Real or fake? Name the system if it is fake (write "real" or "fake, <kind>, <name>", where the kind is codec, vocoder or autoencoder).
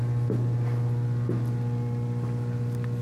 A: real